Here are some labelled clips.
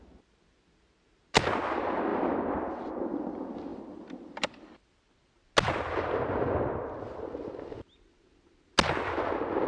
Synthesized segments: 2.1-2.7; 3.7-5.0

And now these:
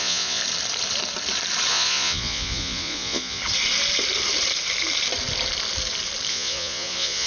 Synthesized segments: 0.0-0.4; 1.7-3.4; 6.3-7.3

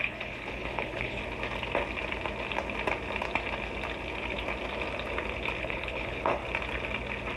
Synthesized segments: 0.0-1.2; 5.6-6.4

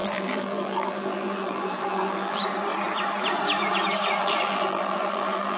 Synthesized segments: 0.0-2.4; 4.2-5.6